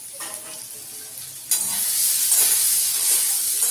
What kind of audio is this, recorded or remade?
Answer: recorded